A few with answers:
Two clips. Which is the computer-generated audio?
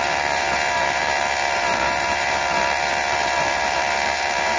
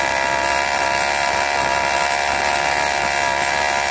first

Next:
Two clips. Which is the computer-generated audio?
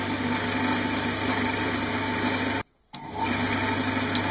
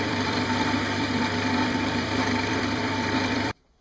second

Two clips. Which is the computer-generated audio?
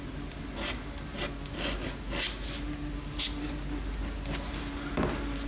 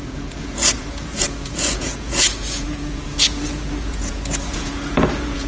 second